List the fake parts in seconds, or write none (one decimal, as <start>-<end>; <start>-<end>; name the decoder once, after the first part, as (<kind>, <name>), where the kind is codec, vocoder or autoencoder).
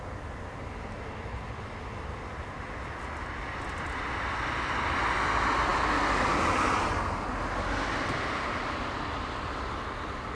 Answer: none